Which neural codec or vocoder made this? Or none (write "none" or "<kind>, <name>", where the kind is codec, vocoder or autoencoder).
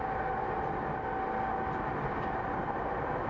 none